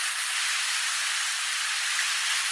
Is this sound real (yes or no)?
yes